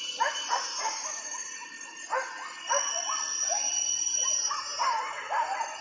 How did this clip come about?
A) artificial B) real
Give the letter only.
B